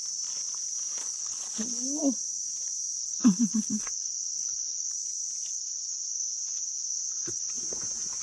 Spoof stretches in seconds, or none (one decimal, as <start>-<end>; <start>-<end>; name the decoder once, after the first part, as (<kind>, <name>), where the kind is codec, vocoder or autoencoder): 1.0-2.0 (codec, HILCodec); 3.0-4.9; 5.5-7.5